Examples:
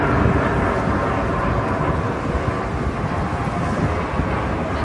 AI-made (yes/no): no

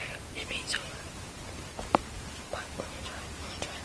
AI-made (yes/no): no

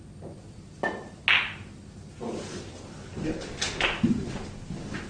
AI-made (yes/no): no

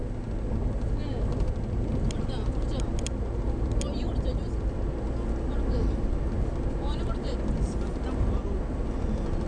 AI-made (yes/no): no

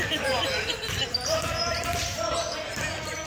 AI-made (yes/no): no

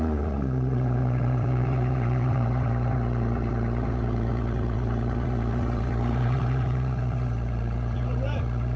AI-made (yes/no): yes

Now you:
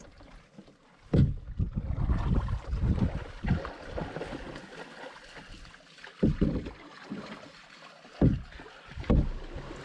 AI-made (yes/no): no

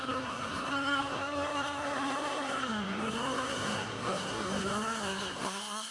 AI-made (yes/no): yes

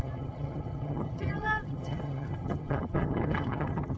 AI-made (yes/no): yes